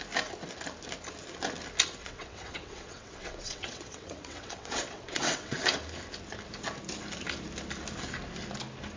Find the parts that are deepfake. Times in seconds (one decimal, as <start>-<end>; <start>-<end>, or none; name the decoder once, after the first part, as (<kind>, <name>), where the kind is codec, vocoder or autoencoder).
2.0-5.6 (vocoder, WaveNeXt)